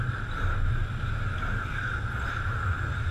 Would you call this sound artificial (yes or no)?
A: no